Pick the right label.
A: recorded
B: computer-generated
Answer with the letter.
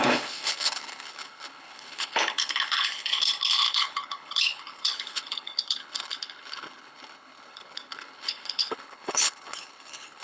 B